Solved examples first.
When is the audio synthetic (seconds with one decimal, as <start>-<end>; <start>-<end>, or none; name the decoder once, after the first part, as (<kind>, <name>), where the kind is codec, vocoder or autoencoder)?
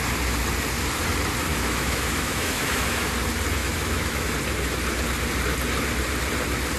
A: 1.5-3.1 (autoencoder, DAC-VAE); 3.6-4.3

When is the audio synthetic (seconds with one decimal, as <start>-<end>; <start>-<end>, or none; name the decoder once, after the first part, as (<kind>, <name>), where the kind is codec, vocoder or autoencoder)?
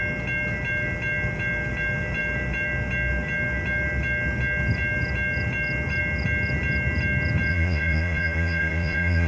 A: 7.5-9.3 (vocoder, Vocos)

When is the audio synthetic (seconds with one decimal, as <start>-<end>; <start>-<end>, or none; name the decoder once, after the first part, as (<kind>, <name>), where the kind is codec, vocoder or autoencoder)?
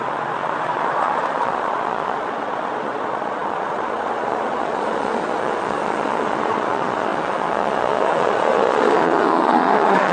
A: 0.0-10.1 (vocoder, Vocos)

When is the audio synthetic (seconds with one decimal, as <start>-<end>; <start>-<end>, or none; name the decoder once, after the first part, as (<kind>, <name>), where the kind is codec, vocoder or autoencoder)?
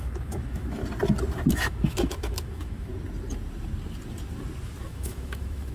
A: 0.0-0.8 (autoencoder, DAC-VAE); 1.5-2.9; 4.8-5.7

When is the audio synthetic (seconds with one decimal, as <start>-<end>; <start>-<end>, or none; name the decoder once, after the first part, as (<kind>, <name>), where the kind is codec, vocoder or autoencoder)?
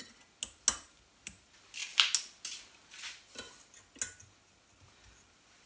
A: none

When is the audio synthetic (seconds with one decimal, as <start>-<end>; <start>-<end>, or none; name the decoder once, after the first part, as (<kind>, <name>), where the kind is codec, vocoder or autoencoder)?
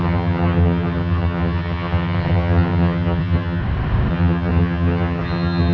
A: 0.0-3.6 (vocoder, HiFi-GAN); 4.1-5.7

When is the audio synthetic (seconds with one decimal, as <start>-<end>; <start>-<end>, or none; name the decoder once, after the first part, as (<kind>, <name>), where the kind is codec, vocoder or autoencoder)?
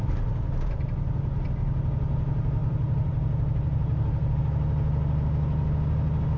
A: 2.6-4.4 (vocoder, BigVGAN v2)